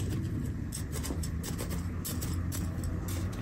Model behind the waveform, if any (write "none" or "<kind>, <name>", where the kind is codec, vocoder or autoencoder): none